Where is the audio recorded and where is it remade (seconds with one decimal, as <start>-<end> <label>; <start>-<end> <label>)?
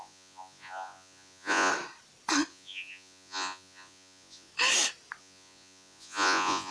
0.0-1.7 remade; 1.7-2.5 recorded; 2.5-4.5 remade; 4.5-5.2 recorded; 5.2-6.7 remade